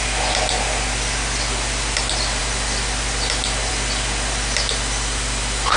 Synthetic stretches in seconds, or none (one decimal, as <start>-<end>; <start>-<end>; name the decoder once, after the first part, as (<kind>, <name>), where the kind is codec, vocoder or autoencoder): none